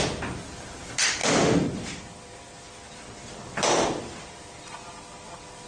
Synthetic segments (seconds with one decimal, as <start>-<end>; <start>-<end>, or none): none